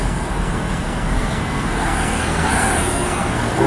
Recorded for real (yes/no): no